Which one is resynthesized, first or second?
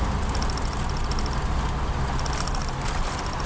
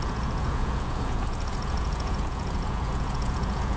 second